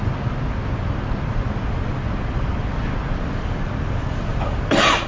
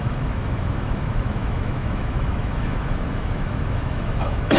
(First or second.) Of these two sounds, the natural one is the first